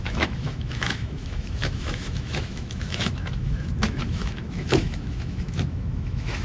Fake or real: fake